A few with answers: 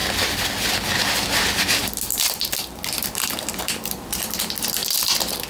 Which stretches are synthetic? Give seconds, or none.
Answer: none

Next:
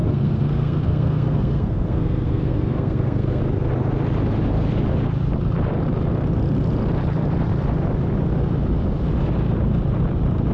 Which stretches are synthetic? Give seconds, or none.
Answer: 0.0-3.4 (codec, SNAC)

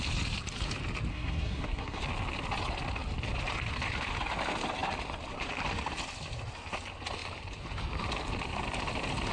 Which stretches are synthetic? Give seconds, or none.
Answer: 1.1-2.0 (codec, SNAC)

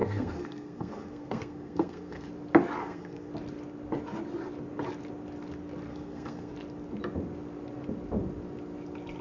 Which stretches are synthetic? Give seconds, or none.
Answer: 0.0-2.3 (codec, SNAC); 2.8-3.3; 5.9-6.5

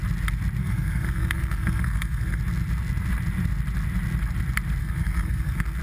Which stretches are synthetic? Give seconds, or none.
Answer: 0.6-2.4 (codec, SNAC); 4.8-5.8